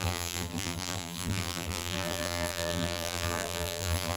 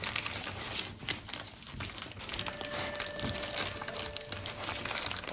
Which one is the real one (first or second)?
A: second